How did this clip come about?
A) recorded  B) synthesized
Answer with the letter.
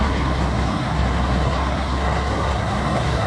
B